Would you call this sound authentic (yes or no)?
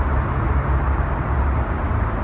yes